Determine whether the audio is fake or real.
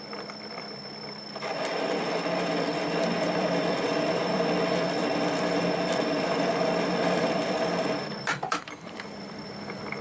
fake